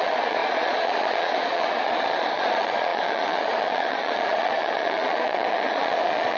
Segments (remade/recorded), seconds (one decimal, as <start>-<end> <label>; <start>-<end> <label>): 0.0-6.4 remade